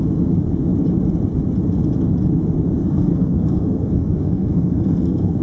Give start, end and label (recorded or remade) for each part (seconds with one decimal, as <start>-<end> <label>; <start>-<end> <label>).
0.0-2.8 recorded; 2.8-5.4 remade